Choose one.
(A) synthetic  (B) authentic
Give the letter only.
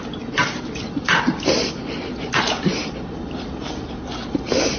A